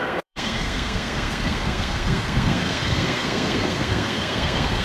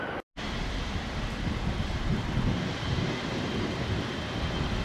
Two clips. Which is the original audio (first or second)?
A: second